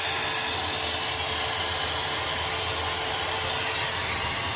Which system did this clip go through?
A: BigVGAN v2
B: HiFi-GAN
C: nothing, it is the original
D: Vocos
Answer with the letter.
C